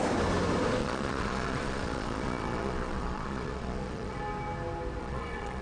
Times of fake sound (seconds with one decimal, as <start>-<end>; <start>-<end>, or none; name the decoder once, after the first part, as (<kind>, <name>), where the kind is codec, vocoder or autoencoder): 0.8-4.2 (vocoder, Vocos); 5.0-5.6